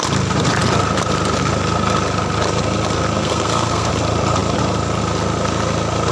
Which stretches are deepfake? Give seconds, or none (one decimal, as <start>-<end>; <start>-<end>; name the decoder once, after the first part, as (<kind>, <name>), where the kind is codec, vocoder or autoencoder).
3.2-3.9 (codec, SNAC)